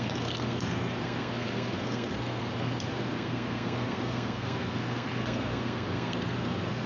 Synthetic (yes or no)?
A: yes